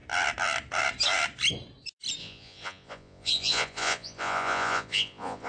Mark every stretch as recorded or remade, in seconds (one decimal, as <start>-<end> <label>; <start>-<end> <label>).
0.0-2.2 recorded; 2.2-5.5 remade